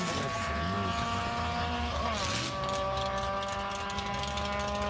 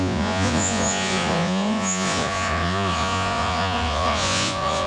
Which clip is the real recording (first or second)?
first